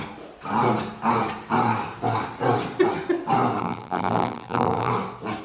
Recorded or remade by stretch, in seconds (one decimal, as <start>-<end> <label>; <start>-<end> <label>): 0.0-3.6 recorded; 3.6-4.9 remade; 4.9-5.4 recorded